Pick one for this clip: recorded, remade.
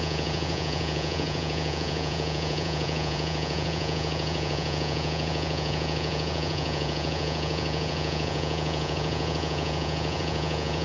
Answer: remade